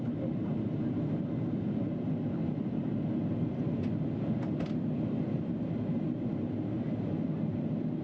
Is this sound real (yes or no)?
yes